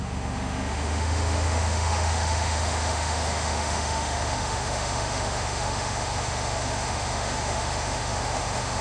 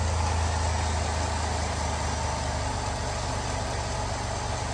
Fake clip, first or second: first